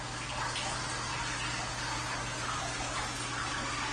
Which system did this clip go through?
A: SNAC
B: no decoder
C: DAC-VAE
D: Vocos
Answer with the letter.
B